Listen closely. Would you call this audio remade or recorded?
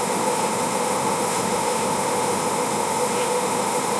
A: remade